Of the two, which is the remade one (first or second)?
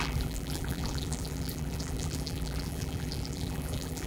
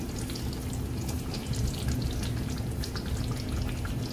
first